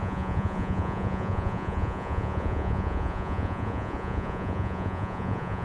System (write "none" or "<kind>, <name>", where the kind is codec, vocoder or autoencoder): vocoder, Vocos